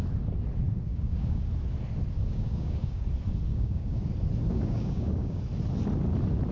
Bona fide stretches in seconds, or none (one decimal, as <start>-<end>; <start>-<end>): 0.0-0.9; 1.5-2.3; 3.0-3.5; 4.0-4.5; 5.4-6.5